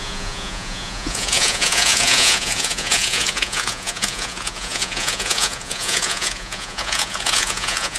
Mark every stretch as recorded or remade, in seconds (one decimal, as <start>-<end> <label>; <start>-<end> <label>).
0.0-8.0 remade